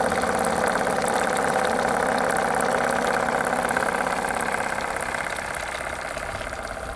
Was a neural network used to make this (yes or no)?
no